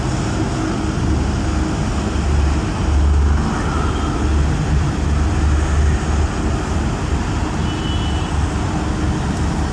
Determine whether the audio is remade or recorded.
recorded